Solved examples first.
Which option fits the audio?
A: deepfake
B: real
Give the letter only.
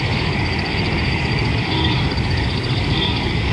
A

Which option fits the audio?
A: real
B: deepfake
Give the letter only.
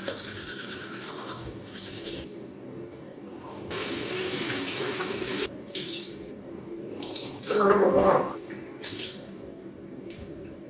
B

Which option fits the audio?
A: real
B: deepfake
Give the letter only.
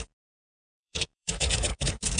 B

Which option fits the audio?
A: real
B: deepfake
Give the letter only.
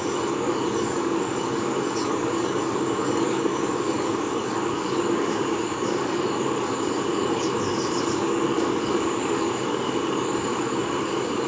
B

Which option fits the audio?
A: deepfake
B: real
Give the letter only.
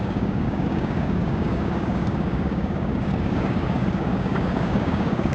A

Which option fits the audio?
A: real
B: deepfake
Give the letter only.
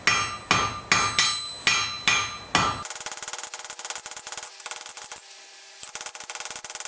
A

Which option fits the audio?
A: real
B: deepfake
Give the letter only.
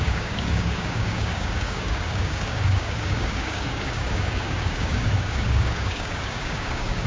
B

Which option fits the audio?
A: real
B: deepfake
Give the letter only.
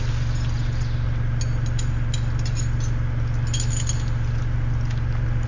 A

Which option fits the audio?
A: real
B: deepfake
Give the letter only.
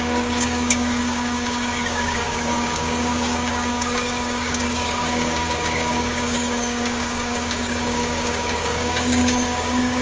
B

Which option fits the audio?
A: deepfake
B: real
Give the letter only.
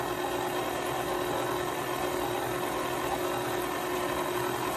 B